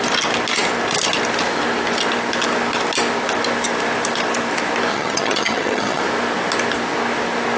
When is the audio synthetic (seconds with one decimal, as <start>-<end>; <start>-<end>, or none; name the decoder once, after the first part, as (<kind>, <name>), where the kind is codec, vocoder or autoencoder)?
4.9-6.0 (vocoder, HiFi-GAN)